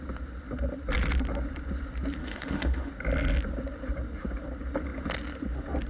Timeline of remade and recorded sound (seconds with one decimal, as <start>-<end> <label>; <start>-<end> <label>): 0.0-2.2 recorded; 2.2-2.9 remade; 2.9-5.9 recorded